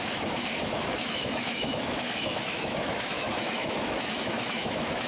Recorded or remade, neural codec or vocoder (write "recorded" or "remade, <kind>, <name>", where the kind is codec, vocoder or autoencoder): remade, autoencoder, DAC-VAE